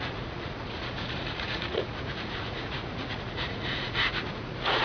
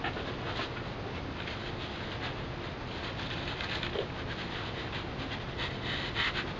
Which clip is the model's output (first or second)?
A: first